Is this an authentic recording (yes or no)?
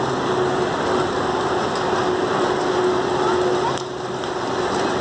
yes